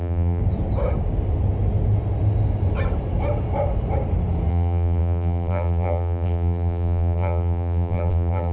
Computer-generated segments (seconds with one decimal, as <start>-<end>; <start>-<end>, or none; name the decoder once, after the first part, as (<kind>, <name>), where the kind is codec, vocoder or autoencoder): 0.0-0.4 (vocoder, BigVGAN v2); 4.5-8.5